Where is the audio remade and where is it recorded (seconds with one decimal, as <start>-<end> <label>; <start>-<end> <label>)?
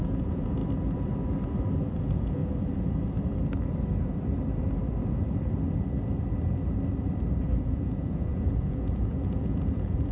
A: 0.0-0.6 remade; 0.6-1.8 recorded; 1.8-2.4 remade; 2.4-7.6 recorded; 7.6-10.1 remade